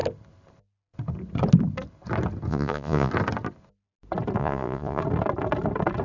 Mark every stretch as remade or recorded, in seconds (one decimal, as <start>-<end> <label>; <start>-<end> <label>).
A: 0.0-2.5 recorded; 2.5-3.1 remade; 3.1-4.4 recorded; 4.4-5.0 remade; 5.0-6.0 recorded

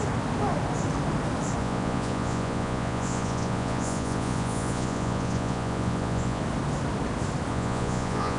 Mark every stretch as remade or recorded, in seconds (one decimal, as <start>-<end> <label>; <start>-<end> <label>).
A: 0.0-1.6 recorded; 1.6-6.4 remade; 6.4-7.5 recorded; 7.5-8.4 remade

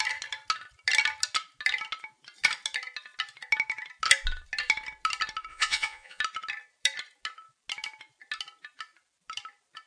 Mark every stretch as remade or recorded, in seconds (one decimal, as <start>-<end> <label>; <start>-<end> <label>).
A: 0.0-5.5 recorded; 5.5-6.2 remade; 6.2-9.9 recorded

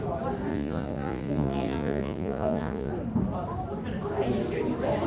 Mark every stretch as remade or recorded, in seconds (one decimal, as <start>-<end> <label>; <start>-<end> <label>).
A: 0.0-0.5 recorded; 0.5-2.9 remade; 2.9-5.1 recorded